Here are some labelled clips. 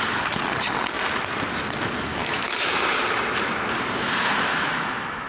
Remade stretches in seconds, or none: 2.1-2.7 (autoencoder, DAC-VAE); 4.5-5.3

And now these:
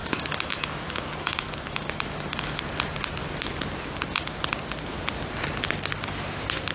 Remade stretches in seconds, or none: 0.0-2.6 (autoencoder, DAC-VAE)

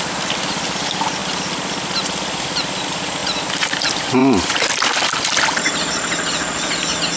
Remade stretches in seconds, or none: none

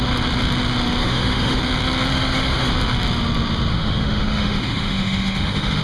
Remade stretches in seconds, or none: 1.0-1.6 (autoencoder, DAC-VAE); 2.1-2.7; 3.7-5.8

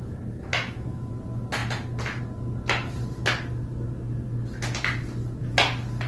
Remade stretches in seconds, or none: 0.5-1.1 (autoencoder, DAC-VAE)